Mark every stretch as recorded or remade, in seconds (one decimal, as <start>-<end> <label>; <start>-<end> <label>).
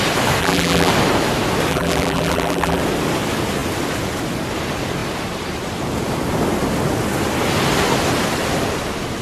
0.0-0.4 recorded; 0.4-0.9 remade; 0.9-1.7 recorded; 1.7-2.8 remade; 2.8-9.2 recorded